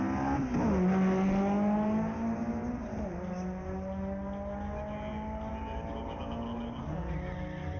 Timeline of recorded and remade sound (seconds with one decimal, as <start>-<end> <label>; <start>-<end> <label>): 0.0-7.8 recorded